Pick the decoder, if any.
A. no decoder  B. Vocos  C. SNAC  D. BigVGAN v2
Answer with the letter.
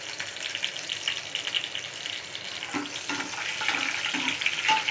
A